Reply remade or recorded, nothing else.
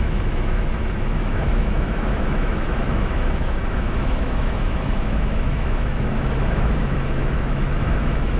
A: remade